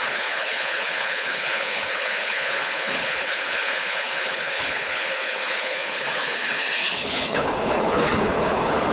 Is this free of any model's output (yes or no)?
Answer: no